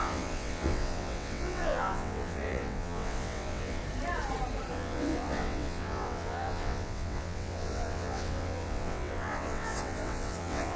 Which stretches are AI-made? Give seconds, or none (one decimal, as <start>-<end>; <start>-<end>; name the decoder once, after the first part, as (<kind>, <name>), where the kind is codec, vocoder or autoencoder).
0.0-3.8 (vocoder, WaveNeXt); 4.7-10.8